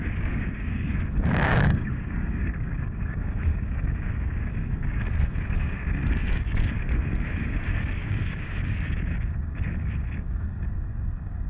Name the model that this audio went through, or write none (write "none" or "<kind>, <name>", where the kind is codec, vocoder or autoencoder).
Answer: codec, DAC